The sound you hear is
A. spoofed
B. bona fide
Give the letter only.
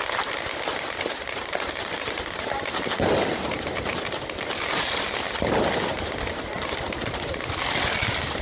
B